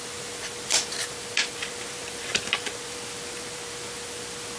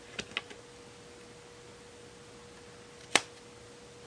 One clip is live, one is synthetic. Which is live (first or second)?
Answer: second